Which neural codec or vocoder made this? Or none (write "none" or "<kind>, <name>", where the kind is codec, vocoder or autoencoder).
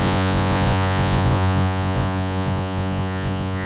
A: vocoder, Vocos